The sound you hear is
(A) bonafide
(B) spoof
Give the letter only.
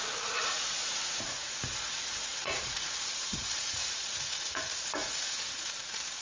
B